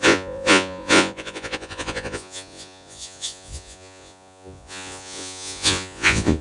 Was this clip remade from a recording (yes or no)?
yes